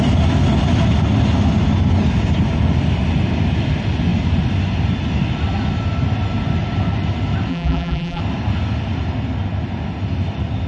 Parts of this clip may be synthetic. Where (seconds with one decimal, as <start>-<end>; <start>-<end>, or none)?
7.5-8.2